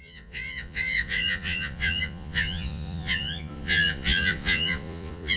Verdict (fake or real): fake